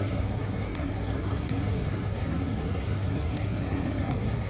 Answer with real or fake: fake